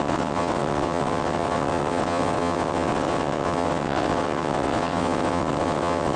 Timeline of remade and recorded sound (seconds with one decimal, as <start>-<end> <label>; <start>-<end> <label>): 0.0-6.2 remade